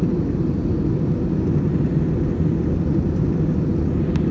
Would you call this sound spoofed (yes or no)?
no